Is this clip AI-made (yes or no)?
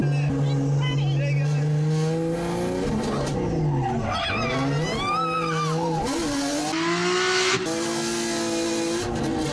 no